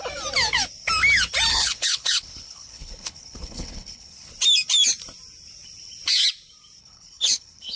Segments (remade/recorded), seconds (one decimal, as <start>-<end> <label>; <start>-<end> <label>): 0.0-1.5 recorded; 1.5-4.3 remade; 4.3-6.8 recorded; 6.8-7.8 remade